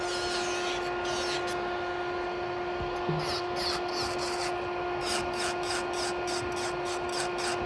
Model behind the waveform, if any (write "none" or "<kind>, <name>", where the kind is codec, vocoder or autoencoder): none